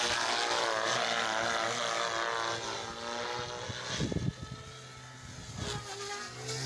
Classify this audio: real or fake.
real